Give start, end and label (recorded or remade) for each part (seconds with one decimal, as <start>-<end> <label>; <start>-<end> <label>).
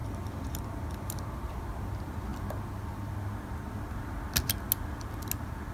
0.0-5.7 recorded